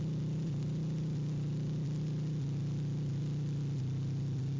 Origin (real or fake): real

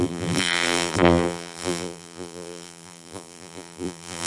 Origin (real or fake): fake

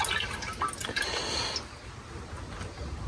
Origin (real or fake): real